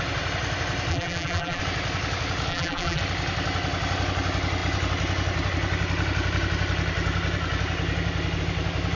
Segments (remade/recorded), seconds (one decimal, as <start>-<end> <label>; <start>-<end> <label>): 0.0-0.9 recorded; 0.9-1.6 remade; 1.6-2.5 recorded; 2.5-3.0 remade; 3.0-9.0 recorded